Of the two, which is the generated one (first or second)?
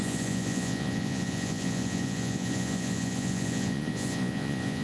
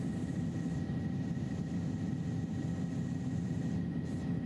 first